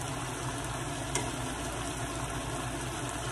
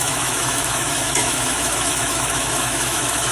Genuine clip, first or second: first